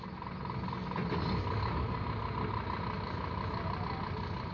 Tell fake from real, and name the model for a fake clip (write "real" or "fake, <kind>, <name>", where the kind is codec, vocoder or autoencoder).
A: real